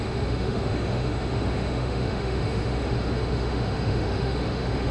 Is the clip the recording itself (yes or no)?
no